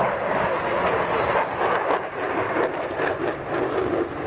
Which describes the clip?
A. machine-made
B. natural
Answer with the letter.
B